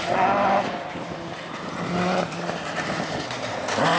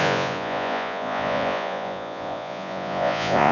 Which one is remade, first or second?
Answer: second